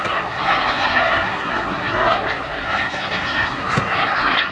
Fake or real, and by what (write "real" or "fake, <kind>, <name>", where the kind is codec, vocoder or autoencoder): fake, codec, SNAC